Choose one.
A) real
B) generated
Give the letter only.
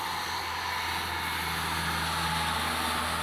A